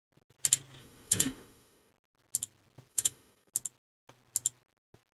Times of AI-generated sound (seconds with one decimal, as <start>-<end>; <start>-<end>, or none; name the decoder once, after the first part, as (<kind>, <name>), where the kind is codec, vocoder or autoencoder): 0.8-1.9 (autoencoder, DAC-VAE); 2.9-3.5